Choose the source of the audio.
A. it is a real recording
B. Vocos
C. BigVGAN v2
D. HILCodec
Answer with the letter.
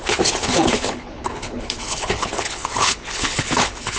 D